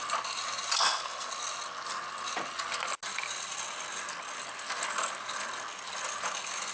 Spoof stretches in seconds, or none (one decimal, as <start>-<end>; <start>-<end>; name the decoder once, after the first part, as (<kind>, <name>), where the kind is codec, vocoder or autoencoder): 0.8-1.3 (codec, SNAC)